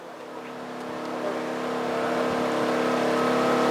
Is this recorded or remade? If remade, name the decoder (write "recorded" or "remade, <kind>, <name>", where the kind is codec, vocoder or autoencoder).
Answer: recorded